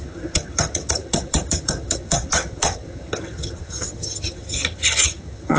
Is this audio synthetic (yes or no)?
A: yes